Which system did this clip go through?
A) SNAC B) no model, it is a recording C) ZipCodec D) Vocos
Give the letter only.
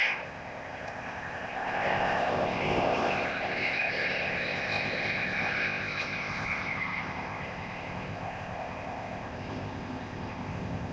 C